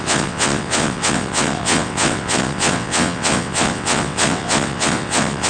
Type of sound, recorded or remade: remade